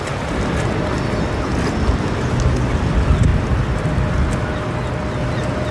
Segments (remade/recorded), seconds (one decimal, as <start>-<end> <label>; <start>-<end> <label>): 0.0-5.7 recorded